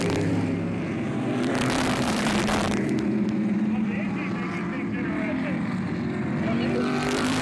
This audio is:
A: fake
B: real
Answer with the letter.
A